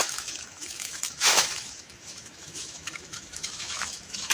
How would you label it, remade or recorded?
remade